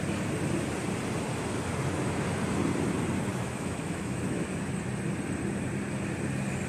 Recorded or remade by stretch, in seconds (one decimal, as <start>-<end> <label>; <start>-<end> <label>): 0.0-3.3 recorded; 3.3-4.7 remade; 4.7-6.7 recorded